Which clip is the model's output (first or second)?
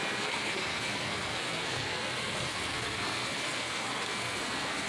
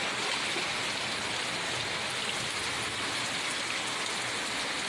first